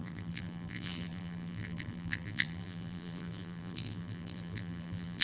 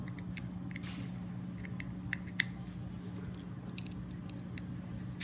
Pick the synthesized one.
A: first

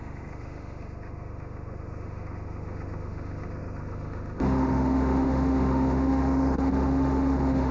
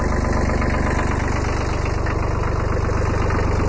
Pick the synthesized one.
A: first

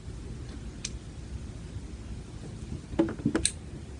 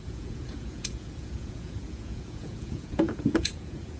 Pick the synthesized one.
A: second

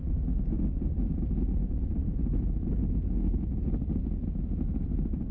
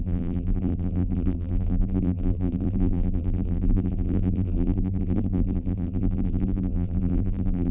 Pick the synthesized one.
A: second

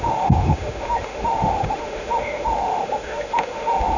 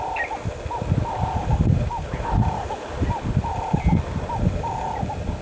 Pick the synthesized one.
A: first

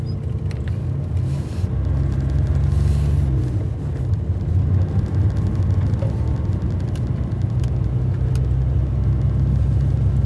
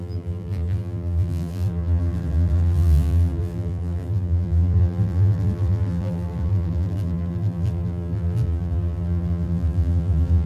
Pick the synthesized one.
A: second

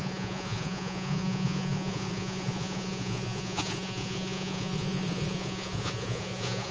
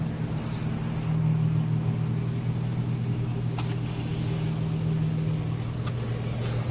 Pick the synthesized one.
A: first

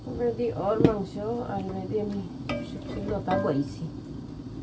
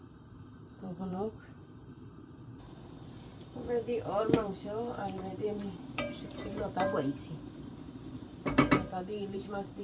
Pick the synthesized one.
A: second